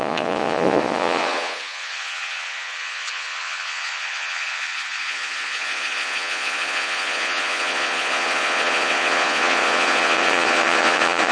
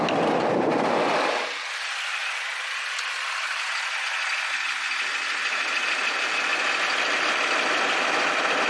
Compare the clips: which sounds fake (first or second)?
first